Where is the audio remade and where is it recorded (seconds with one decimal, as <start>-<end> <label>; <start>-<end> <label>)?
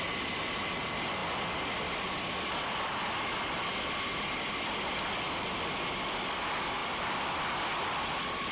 0.0-8.5 recorded